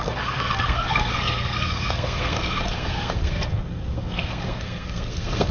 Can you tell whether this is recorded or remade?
remade